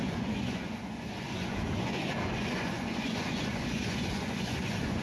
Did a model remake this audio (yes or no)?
yes